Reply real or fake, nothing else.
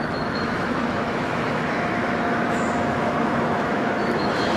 fake